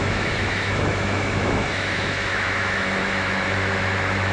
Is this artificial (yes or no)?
yes